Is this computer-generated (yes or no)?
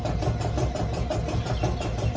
no